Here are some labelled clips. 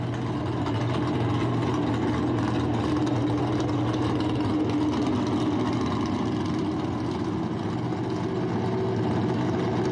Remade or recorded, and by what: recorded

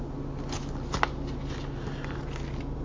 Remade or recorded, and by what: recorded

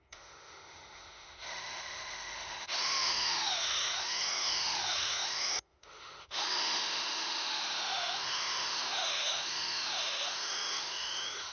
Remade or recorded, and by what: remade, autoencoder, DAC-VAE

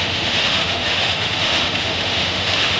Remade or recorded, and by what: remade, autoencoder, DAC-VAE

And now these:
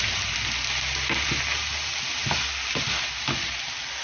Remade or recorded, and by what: recorded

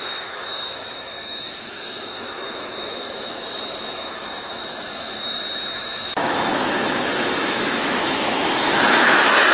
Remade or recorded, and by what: remade, autoencoder, DAC-VAE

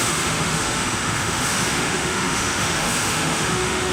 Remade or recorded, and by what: remade, autoencoder, DAC-VAE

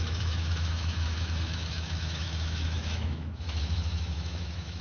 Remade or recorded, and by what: remade, autoencoder, DAC-VAE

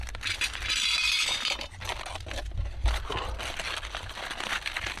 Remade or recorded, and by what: recorded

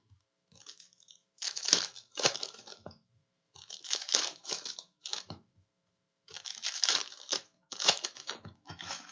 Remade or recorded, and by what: remade, autoencoder, DAC-VAE